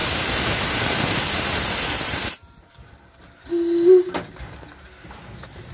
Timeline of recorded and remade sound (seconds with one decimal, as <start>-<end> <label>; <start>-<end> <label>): 0.0-3.4 remade; 3.4-5.7 recorded